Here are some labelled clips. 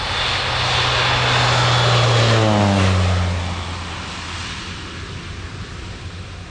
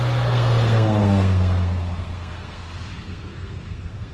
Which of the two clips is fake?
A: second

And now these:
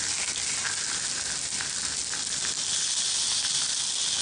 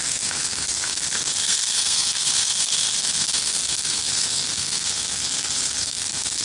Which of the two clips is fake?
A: second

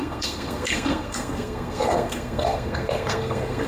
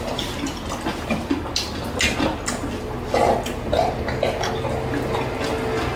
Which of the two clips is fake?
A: first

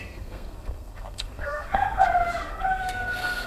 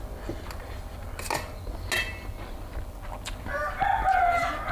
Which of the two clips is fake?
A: first